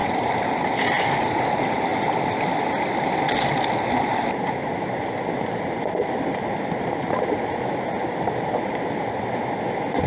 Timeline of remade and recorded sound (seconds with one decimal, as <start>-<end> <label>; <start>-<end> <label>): 0.0-0.5 remade; 0.5-10.1 recorded